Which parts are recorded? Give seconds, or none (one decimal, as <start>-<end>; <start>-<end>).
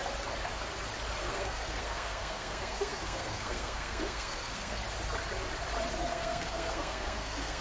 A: 0.0-1.2; 4.8-6.0